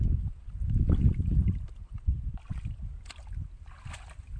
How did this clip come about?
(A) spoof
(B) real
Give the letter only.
B